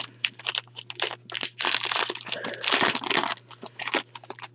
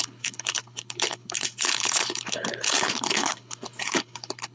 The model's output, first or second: second